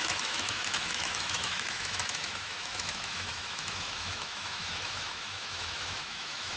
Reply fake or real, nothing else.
fake